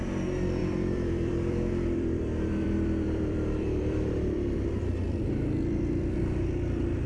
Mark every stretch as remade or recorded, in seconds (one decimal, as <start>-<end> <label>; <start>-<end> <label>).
0.0-0.6 recorded; 0.6-4.9 remade; 4.9-7.1 recorded

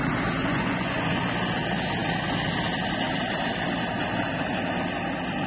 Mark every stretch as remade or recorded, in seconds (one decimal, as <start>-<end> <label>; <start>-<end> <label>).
0.0-0.4 recorded; 0.4-1.2 remade; 1.2-5.5 recorded